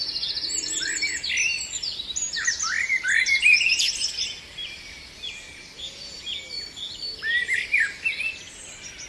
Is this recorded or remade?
recorded